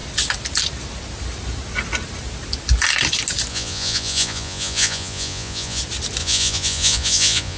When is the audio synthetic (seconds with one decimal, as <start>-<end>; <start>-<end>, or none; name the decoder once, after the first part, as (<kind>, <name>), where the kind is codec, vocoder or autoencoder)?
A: 3.5-5.8 (vocoder, Vocos); 6.2-7.6